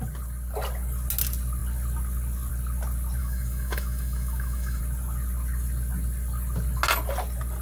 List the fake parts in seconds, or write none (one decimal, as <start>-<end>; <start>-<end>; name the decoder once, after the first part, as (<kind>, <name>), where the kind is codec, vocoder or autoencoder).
3.2-4.8 (autoencoder, DAC-VAE)